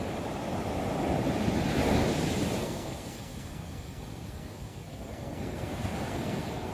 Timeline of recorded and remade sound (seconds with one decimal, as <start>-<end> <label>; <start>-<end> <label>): 0.0-2.6 recorded; 2.6-6.7 remade